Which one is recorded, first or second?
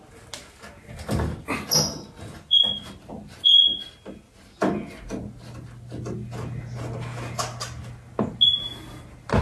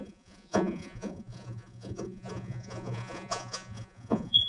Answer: first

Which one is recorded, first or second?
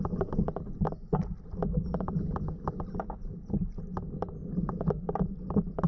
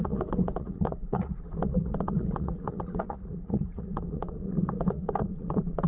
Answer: first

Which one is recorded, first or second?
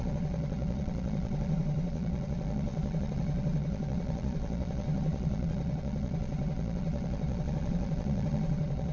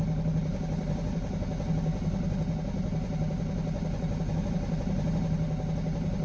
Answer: second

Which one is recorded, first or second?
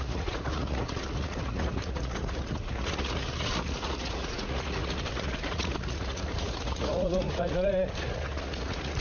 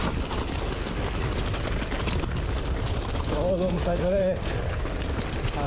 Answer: second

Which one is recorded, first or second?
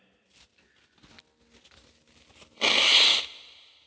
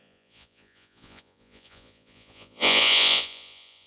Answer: first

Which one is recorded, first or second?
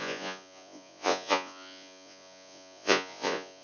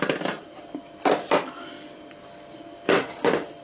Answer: second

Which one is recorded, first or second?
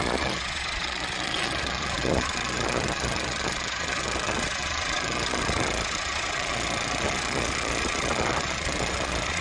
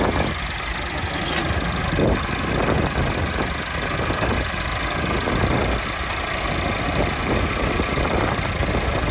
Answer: second